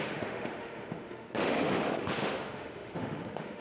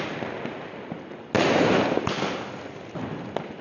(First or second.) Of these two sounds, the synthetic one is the first